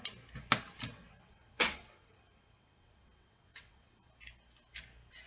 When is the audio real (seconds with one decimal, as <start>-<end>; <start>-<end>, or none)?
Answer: 0.0-0.9; 4.1-5.3